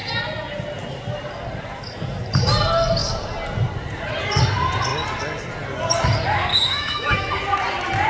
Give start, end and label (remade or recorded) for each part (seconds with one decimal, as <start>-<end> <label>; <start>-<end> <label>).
0.0-6.5 recorded; 6.5-7.3 remade; 7.3-8.1 recorded